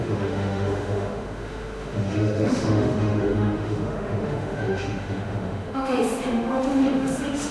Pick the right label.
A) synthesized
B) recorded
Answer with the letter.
A